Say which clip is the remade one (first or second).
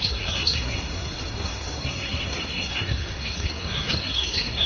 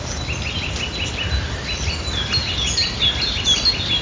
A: first